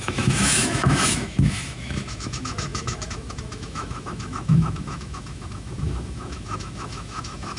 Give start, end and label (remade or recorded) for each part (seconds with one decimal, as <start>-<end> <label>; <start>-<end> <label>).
0.0-7.6 remade